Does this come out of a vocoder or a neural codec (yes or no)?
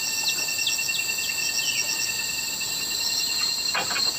no